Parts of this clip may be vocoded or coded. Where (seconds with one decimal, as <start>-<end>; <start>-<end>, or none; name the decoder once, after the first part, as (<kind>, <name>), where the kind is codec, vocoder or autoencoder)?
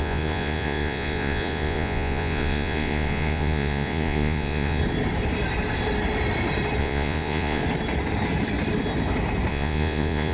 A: 0.0-4.8 (vocoder, Vocos); 6.8-7.6; 9.5-10.3